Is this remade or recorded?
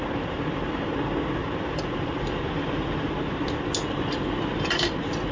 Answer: recorded